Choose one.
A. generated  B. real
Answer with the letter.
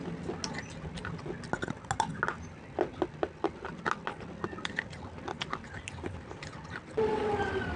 B